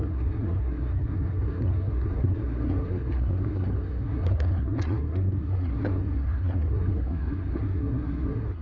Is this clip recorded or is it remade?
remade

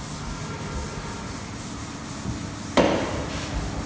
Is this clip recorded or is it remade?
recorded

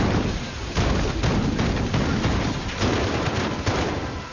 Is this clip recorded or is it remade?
recorded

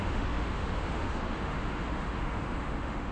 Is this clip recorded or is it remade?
remade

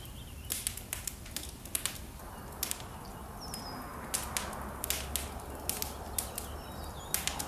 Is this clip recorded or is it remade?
recorded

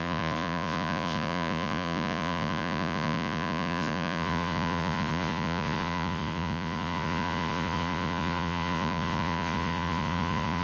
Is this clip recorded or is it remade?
remade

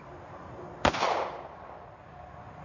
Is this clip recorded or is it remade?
recorded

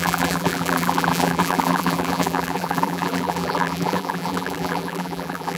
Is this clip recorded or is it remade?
remade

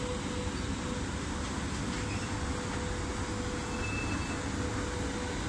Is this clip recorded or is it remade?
recorded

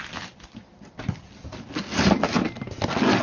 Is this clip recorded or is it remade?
recorded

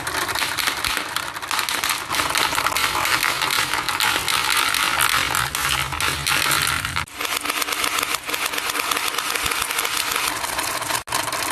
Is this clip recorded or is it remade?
recorded